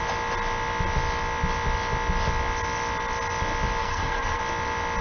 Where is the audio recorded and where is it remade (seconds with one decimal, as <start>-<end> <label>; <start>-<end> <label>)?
0.0-3.8 recorded; 3.8-4.4 remade; 4.4-5.0 recorded